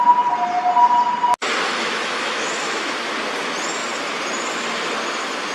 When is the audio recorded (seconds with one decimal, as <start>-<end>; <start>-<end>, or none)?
0.0-1.7; 2.9-5.5